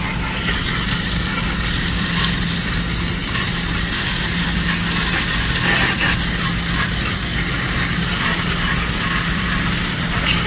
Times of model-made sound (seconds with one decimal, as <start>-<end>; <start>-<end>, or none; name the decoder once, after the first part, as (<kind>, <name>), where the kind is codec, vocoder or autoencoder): none